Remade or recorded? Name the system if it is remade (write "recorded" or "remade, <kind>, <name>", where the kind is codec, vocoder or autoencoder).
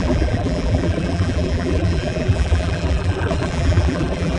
remade, vocoder, BigVGAN v2